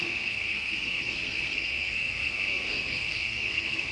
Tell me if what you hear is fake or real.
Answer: fake